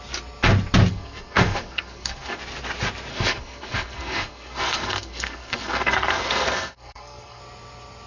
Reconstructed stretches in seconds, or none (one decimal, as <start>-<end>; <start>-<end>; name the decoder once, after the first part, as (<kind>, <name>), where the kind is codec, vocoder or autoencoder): 0.9-2.4 (codec, SNAC); 3.1-7.4